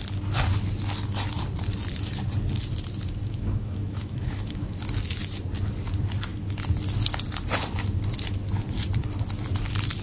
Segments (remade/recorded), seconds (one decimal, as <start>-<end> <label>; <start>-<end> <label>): 0.0-3.2 recorded; 3.2-4.8 remade; 4.8-10.0 recorded